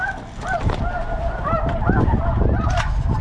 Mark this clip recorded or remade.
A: recorded